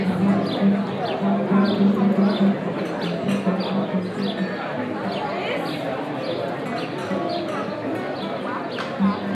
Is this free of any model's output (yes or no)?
yes